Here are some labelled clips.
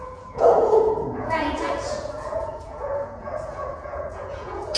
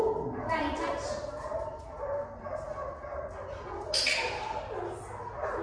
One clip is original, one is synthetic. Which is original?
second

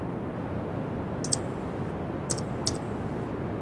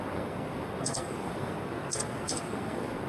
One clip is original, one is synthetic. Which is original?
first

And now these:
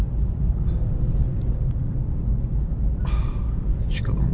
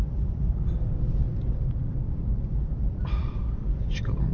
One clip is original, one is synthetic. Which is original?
first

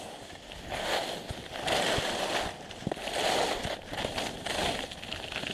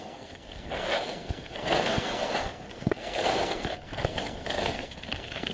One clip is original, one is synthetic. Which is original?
first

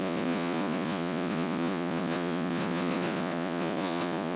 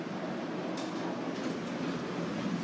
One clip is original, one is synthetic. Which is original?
second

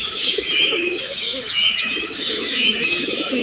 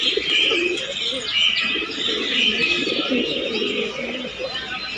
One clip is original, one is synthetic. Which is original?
second